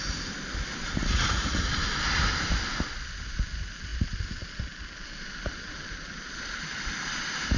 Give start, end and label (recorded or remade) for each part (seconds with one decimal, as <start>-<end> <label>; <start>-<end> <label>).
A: 0.0-1.0 recorded; 1.0-1.7 remade; 1.7-7.6 recorded